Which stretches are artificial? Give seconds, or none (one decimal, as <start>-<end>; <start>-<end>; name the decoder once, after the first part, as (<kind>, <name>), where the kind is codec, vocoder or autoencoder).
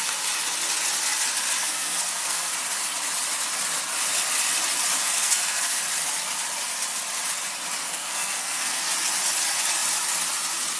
1.6-2.5 (codec, SNAC); 5.0-5.8; 7.8-8.9